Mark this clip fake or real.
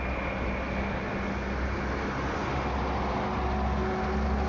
real